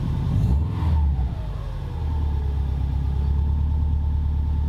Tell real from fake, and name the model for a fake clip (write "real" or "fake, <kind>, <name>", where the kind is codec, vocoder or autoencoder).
real